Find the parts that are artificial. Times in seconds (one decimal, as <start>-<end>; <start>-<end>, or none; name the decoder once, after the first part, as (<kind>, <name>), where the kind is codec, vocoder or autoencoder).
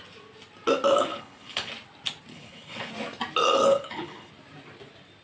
1.1-1.7 (codec, HILCodec); 2.3-2.9; 3.7-4.3